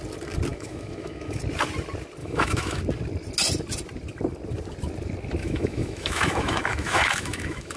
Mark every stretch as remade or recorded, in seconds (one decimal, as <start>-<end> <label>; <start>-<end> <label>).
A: 0.0-0.5 recorded; 0.5-1.4 remade; 1.4-2.2 recorded; 2.2-2.8 remade; 2.8-5.4 recorded; 5.4-7.8 remade